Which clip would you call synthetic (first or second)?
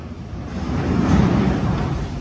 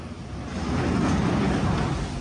first